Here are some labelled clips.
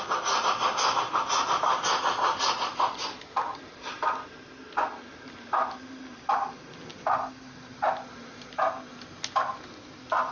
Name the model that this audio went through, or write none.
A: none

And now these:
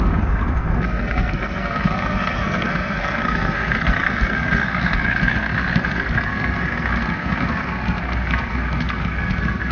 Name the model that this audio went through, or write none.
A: codec, SNAC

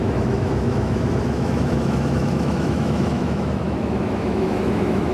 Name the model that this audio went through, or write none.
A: autoencoder, DAC-VAE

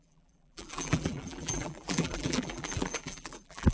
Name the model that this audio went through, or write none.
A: vocoder, BigVGAN v2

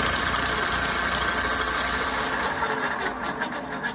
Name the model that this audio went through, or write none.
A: none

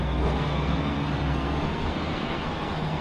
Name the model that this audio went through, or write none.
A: codec, SNAC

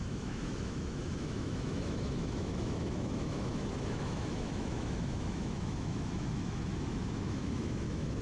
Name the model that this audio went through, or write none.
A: autoencoder, DAC-VAE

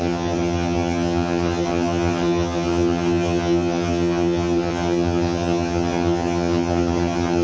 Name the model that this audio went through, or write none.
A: vocoder, HiFi-GAN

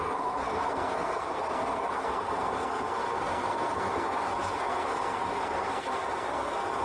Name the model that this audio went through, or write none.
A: codec, SNAC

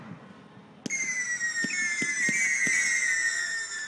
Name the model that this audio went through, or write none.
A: none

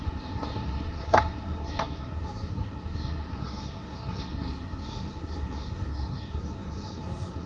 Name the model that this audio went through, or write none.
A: codec, SNAC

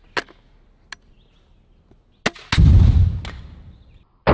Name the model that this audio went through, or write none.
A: none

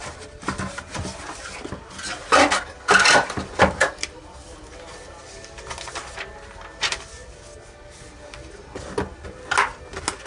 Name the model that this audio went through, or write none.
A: none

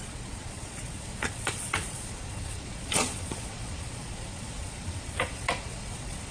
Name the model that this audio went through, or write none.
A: vocoder, Vocos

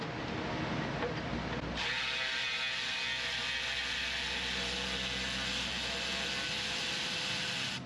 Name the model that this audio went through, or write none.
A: none